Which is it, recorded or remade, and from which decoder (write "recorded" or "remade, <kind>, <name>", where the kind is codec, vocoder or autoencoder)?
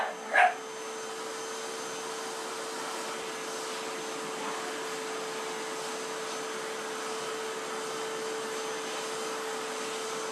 recorded